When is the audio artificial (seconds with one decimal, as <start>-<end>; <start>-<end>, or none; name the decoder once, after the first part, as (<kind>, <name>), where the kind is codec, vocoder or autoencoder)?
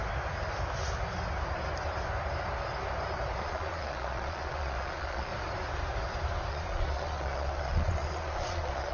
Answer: 3.4-5.3 (vocoder, Vocos); 6.5-8.9